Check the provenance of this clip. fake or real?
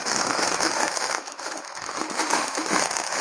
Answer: fake